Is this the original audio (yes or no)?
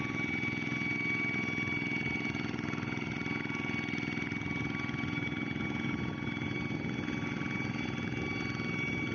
yes